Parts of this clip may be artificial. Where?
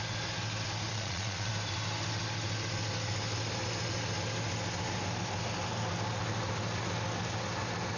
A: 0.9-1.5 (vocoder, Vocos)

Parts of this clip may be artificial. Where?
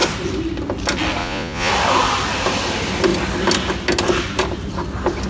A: 1.2-1.7 (vocoder, Vocos)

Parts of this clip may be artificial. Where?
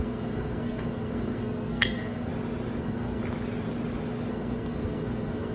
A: 0.0-2.3 (codec, SNAC); 2.8-3.2; 4.3-5.5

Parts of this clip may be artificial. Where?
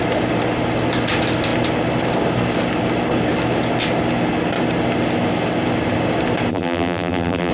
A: 6.5-7.5 (vocoder, BigVGAN v2)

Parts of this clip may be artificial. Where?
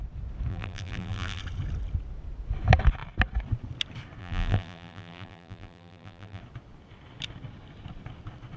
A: 0.5-1.4 (vocoder, BigVGAN v2); 4.2-6.4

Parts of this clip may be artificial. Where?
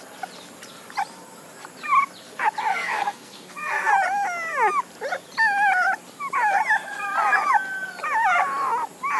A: 2.7-3.9 (codec, SNAC)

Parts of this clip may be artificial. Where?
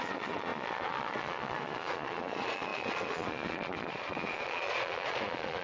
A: 0.0-5.6 (vocoder, Vocos)